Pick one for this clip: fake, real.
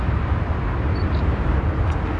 real